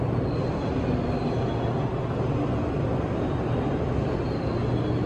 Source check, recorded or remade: recorded